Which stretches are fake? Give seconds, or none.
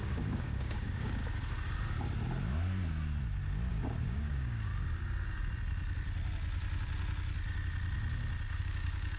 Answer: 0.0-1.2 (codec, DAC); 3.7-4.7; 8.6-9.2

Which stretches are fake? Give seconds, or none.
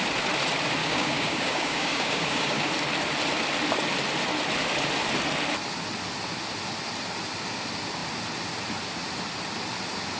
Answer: 0.8-2.7 (codec, DAC)